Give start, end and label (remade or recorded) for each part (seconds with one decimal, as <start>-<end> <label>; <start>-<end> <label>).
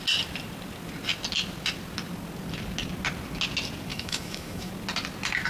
0.0-3.9 recorded; 3.9-4.7 remade; 4.7-5.5 recorded